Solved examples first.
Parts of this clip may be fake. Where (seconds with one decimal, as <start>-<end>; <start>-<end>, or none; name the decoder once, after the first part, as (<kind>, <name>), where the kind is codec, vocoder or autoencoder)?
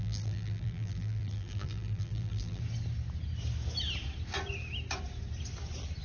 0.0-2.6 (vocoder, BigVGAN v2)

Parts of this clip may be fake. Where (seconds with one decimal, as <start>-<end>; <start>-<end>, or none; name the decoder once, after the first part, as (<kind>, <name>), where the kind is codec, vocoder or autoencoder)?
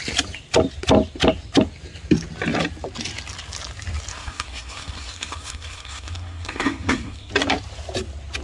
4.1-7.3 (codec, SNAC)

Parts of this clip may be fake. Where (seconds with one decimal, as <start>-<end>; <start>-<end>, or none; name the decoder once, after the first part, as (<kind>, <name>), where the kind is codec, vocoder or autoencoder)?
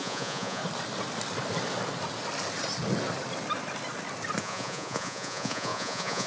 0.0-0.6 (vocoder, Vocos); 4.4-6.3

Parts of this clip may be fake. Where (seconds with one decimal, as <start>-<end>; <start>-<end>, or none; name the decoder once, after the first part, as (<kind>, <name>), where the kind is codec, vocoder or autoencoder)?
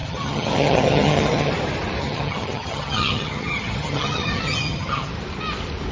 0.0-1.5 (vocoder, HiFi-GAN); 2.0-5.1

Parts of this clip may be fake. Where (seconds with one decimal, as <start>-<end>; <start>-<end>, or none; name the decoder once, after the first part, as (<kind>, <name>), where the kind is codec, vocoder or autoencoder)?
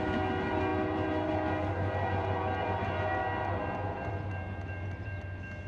none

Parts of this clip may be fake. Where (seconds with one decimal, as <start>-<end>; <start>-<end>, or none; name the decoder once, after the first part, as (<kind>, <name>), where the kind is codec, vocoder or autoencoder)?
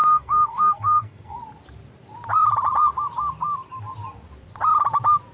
0.0-1.4 (codec, SNAC)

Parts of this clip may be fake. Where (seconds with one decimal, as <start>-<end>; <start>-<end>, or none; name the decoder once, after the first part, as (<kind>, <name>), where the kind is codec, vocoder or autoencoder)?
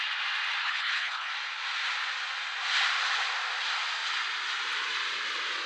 0.6-1.3 (codec, HILCodec)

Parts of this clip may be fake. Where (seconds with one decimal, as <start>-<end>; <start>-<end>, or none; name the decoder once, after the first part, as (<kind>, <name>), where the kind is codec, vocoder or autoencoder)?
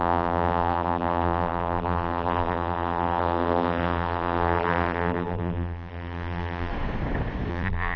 0.0-6.7 (vocoder, BigVGAN v2); 7.5-8.0